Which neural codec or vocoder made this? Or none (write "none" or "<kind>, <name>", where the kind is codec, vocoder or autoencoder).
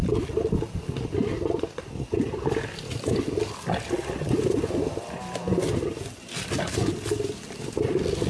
none